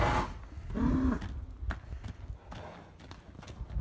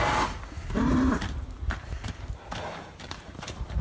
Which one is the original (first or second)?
first